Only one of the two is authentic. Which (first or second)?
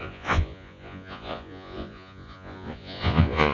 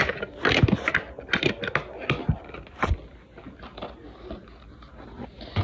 second